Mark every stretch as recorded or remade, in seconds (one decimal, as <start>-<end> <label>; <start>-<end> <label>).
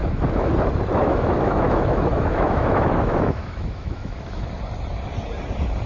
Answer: 0.0-0.5 remade; 0.5-1.0 recorded; 1.0-4.5 remade; 4.5-5.9 recorded